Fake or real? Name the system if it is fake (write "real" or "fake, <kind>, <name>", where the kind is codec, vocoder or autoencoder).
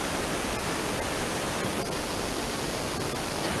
real